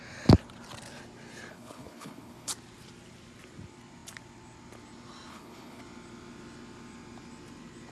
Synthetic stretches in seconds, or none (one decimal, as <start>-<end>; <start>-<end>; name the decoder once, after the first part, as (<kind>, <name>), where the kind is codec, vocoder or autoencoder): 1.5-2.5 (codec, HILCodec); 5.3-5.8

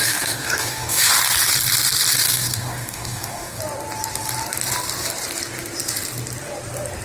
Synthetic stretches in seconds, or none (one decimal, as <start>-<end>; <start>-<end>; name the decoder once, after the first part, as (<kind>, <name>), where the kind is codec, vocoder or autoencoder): 0.0-1.1 (codec, DAC); 2.1-3.6

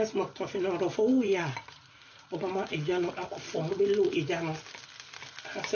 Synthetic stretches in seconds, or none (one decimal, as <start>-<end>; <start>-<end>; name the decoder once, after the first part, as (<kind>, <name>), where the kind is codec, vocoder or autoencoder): 1.1-3.1 (vocoder, Vocos)

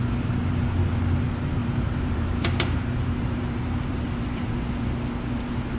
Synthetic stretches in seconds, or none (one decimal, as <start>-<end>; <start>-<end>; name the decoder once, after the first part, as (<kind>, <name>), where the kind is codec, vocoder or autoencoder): 1.6-4.5 (vocoder, BigVGAN v2)

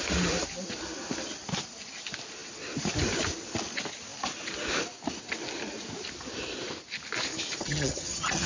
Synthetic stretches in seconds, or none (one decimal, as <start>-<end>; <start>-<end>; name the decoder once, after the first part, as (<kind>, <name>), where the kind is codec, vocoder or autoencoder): 7.6-8.5 (vocoder, HiFi-GAN)

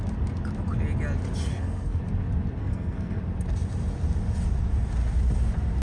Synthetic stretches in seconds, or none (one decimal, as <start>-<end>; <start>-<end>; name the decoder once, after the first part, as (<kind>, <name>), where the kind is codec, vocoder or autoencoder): 1.5-2.0 (codec, SNAC); 2.6-3.2